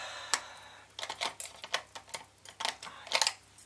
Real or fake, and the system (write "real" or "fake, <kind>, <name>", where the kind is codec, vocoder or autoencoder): real